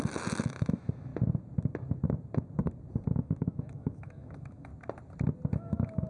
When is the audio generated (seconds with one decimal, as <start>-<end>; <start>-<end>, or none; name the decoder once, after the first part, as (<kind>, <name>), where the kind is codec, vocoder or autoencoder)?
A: 0.0-1.1 (autoencoder, DAC-VAE); 3.1-4.7; 5.5-6.1